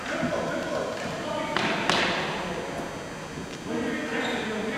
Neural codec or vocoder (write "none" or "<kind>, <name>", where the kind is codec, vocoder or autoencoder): none